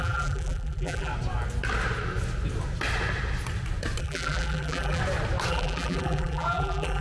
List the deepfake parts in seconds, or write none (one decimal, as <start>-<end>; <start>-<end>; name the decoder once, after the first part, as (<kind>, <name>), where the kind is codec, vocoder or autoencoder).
0.0-1.1 (vocoder, BigVGAN v2); 4.0-5.0; 5.5-7.0